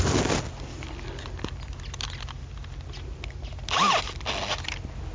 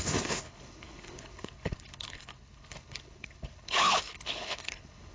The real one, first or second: first